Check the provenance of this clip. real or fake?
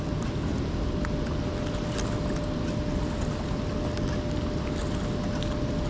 real